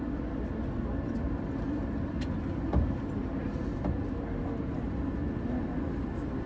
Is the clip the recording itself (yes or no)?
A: yes